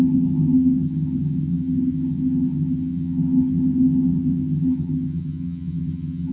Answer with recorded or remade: remade